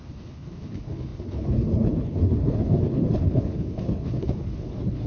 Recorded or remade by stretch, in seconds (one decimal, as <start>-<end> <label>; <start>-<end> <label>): 0.0-5.1 remade